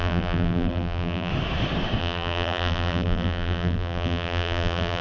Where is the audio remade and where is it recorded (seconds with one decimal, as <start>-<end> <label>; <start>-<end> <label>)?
0.0-1.3 remade; 1.3-2.0 recorded; 2.0-5.0 remade